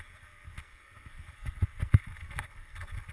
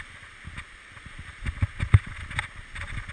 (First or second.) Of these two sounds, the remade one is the first